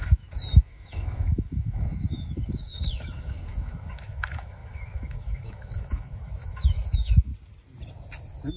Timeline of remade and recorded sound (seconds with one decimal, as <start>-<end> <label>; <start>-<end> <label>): 0.0-7.3 remade; 7.3-8.6 recorded